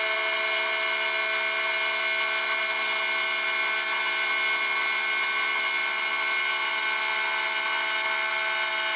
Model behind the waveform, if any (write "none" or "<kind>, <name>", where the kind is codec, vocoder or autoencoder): none